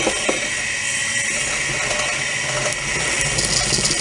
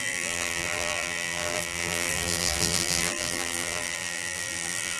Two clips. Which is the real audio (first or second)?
first